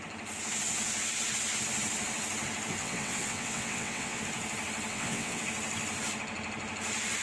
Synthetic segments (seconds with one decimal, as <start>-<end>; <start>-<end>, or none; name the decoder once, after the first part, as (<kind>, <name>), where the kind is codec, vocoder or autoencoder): 2.8-4.2 (vocoder, WaveNeXt); 4.9-5.4